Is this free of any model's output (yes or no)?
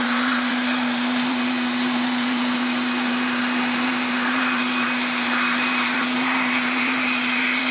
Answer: no